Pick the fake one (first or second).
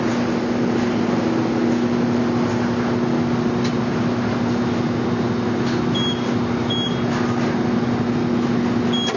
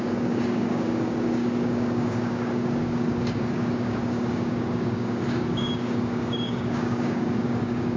second